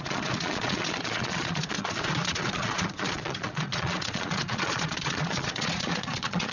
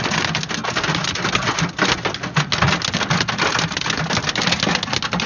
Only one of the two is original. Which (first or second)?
second